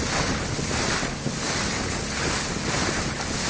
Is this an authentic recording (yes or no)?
yes